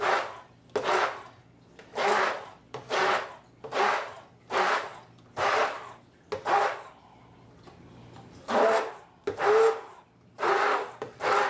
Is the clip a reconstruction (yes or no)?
no